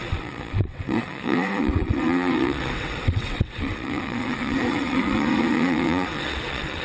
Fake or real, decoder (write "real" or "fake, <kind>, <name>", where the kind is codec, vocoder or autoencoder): fake, vocoder, WaveNeXt